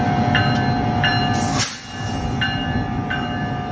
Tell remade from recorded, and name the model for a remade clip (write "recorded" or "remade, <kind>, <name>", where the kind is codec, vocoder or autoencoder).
recorded